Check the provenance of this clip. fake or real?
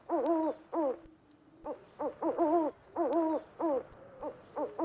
real